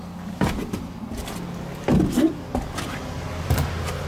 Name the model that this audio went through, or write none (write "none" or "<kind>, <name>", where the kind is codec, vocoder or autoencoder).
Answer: none